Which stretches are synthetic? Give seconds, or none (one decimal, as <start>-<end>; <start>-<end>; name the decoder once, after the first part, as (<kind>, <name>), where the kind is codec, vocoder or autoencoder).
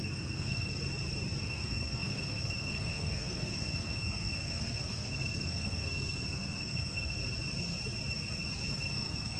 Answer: 0.0-0.7 (codec, SNAC); 1.4-7.2; 8.7-9.4